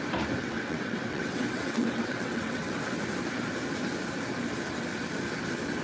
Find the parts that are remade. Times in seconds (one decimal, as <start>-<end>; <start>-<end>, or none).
0.4-2.7